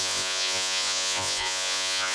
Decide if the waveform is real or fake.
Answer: fake